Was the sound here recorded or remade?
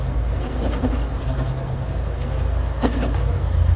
remade